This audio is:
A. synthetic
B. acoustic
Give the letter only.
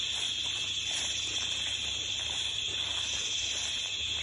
A